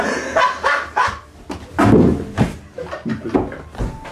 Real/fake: real